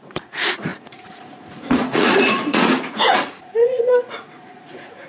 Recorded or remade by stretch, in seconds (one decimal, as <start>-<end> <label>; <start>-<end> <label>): 0.0-5.1 remade